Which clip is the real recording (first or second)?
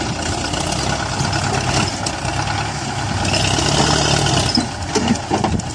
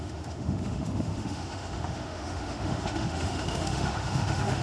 first